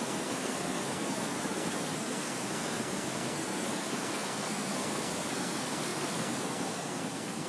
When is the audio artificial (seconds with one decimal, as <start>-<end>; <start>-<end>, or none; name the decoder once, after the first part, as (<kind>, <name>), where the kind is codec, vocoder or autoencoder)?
0.0-7.5 (codec, SNAC)